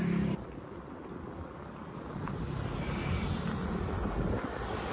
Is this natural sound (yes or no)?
yes